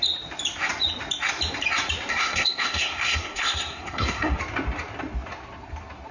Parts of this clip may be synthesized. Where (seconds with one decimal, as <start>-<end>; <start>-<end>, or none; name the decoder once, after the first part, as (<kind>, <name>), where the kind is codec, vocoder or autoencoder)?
2.1-4.4 (codec, SNAC)